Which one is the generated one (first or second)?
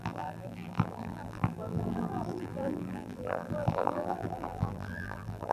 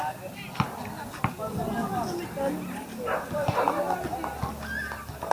first